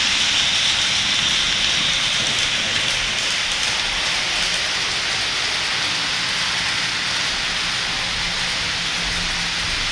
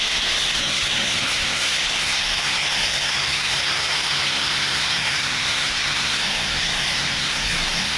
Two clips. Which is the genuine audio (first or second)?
first